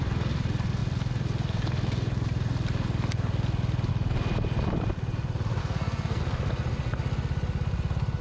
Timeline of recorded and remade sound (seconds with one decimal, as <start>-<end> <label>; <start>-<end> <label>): 0.0-5.6 recorded; 5.6-6.2 remade; 6.2-8.2 recorded